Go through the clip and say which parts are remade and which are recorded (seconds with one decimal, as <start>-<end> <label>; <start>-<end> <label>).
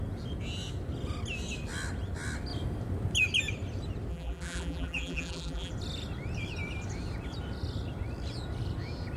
0.0-4.1 recorded; 4.1-5.7 remade; 5.7-9.2 recorded